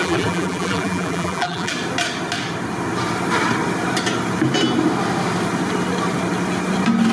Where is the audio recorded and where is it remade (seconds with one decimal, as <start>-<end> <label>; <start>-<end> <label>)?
0.0-1.7 remade; 1.7-7.1 recorded